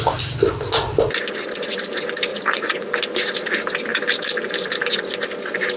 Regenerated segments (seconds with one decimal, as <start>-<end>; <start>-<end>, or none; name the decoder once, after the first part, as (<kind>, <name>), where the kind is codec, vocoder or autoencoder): 2.3-2.9 (vocoder, Vocos)